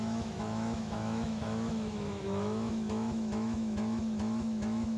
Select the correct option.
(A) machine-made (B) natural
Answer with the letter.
A